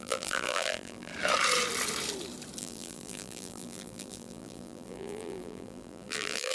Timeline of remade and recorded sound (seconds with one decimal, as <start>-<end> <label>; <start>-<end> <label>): 0.0-1.1 remade; 1.1-2.6 recorded; 2.6-6.5 remade